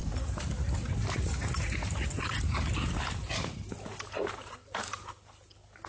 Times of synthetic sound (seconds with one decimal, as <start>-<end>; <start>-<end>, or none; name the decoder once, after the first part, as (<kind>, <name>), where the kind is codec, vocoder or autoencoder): none